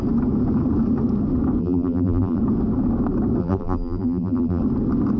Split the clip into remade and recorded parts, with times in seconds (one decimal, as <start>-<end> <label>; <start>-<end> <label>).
0.0-1.6 recorded; 1.6-2.4 remade; 2.4-3.4 recorded; 3.4-4.6 remade; 4.6-5.2 recorded